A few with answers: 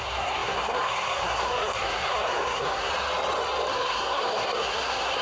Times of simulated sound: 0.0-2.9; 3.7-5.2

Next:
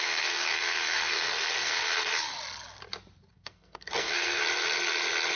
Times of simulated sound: 0.0-2.1; 3.3-4.4

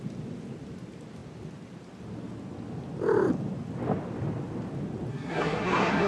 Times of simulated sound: 5.1-6.1

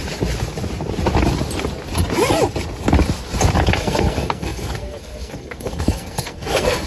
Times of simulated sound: 3.8-6.9

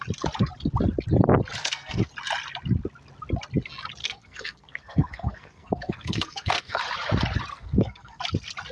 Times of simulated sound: 1.6-2.1; 4.0-6.8; 7.5-8.2

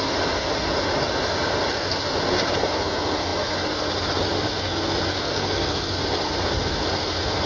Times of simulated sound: 5.2-5.9

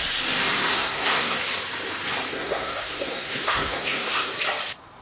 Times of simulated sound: 0.7-1.4; 2.3-4.3

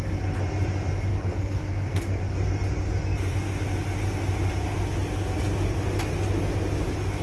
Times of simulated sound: 1.1-2.2